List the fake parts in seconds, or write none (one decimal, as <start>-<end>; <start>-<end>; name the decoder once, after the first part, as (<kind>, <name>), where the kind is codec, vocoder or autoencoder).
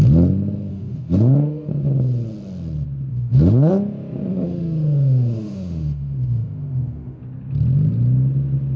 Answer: 0.7-1.7 (autoencoder, DAC-VAE); 3.1-3.7; 4.3-7.2